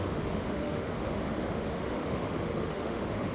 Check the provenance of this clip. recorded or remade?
remade